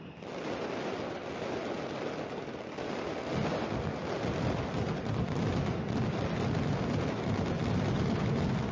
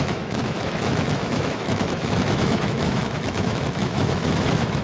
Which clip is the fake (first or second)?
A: second